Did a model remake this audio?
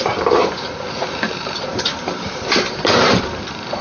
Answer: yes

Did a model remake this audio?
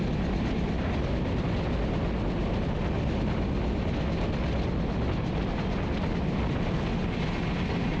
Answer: no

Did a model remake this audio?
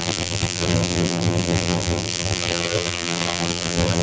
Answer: yes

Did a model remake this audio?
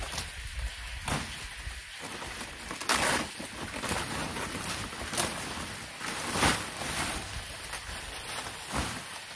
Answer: no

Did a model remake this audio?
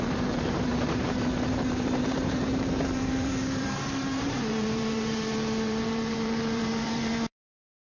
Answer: yes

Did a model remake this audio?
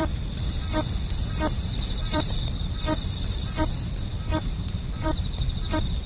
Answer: yes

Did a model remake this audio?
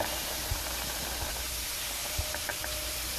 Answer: yes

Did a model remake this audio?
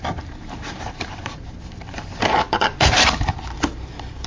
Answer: yes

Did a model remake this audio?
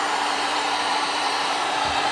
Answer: yes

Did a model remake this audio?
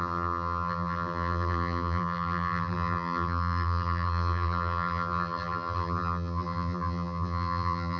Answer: yes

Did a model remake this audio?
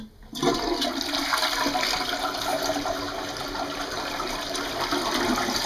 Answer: no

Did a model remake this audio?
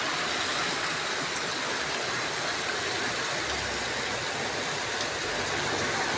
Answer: no